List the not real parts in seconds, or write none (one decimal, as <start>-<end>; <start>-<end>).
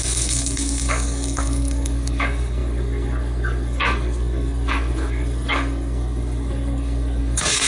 0.0-7.7